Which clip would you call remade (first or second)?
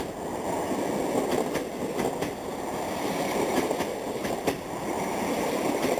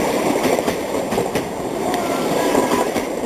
second